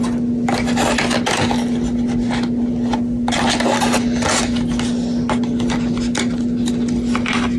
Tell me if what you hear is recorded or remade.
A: recorded